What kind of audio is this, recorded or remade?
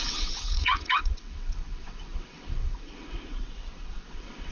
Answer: remade